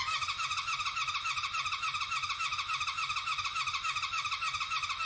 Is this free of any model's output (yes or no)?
yes